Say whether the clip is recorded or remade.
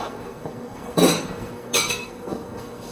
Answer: remade